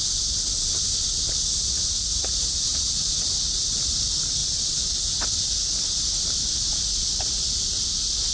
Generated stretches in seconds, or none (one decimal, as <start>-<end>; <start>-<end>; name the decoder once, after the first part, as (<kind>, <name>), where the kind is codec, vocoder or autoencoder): none